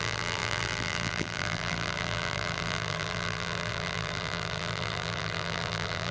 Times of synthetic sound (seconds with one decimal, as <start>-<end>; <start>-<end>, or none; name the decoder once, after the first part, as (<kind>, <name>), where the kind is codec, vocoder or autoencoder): 0.0-6.1 (vocoder, BigVGAN v2)